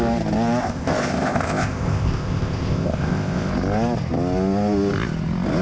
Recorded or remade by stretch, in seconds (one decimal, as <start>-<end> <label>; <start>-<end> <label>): 0.0-0.6 recorded; 0.6-3.5 remade; 3.5-5.6 recorded